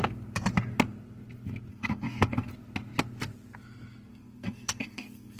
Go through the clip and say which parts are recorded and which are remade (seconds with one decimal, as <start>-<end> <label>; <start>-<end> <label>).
0.0-1.7 recorded; 1.7-2.5 remade; 2.5-4.1 recorded; 4.1-5.4 remade